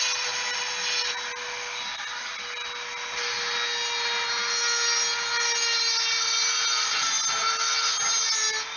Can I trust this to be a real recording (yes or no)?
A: yes